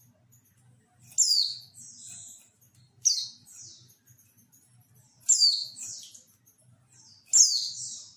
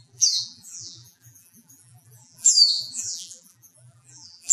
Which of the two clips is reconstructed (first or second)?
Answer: second